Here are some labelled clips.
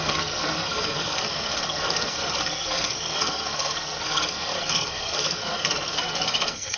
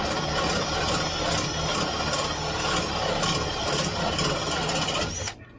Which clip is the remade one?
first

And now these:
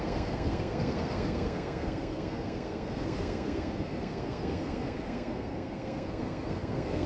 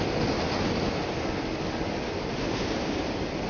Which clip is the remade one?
first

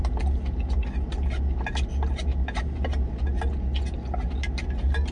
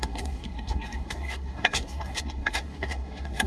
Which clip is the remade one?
second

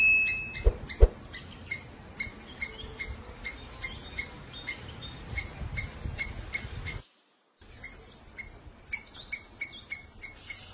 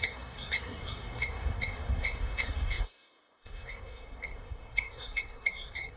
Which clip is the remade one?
second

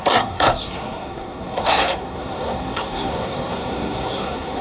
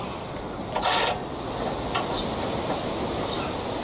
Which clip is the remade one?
first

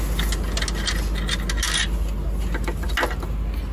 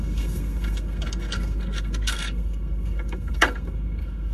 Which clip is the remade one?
second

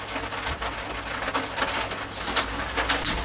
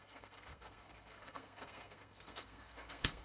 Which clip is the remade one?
second